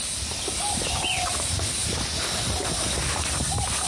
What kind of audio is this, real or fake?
real